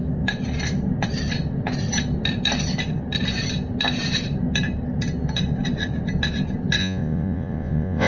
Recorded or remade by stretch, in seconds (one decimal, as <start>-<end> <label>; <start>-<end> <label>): 0.0-6.8 recorded; 6.8-8.1 remade

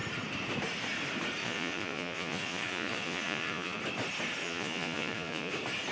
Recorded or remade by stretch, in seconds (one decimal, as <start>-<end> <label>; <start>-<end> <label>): 0.0-1.4 recorded; 1.4-3.8 remade; 3.8-4.4 recorded; 4.4-5.5 remade; 5.5-5.9 recorded

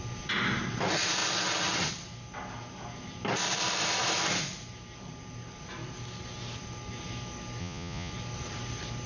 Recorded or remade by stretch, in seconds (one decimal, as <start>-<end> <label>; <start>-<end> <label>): 0.0-7.6 recorded; 7.6-8.1 remade; 8.1-9.1 recorded

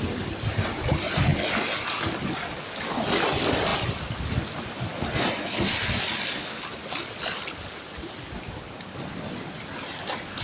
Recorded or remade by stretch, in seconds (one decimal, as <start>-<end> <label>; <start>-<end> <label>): 0.0-10.4 recorded

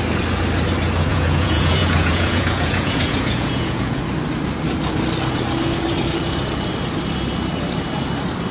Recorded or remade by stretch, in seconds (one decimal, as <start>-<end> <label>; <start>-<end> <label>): 0.0-1.1 recorded; 1.1-4.0 remade; 4.0-8.5 recorded

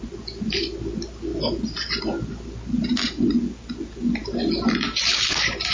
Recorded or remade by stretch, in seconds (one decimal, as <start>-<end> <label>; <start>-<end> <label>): 0.0-5.7 recorded

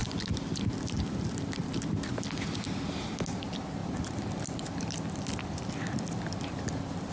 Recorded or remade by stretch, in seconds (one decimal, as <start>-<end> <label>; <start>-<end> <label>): 0.0-7.1 recorded